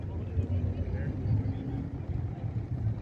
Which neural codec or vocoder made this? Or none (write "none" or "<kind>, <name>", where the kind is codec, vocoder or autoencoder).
none